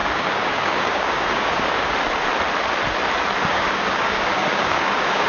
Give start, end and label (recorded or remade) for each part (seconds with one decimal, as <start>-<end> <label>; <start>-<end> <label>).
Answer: 0.0-1.9 remade; 1.9-3.5 recorded; 3.5-5.3 remade